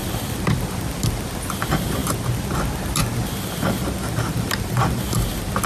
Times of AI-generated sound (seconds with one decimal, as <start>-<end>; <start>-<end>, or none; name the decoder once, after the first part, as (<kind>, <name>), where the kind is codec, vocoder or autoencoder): 0.0-1.0 (vocoder, BigVGAN v2)